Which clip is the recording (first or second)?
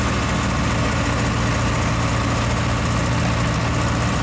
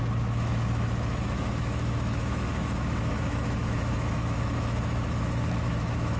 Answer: first